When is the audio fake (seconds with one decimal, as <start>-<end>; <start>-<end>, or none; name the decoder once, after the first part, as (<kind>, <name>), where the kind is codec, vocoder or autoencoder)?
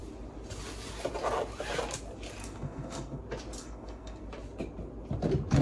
2.4-3.2 (codec, SNAC); 3.6-4.2